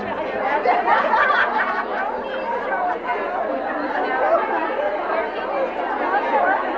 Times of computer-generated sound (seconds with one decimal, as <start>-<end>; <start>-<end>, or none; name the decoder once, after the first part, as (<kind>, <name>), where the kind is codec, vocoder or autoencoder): none